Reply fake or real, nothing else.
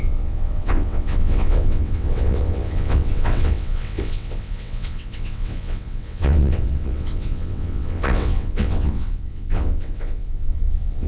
fake